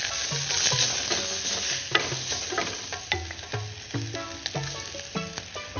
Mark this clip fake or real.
real